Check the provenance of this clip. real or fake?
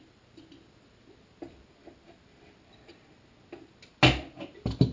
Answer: real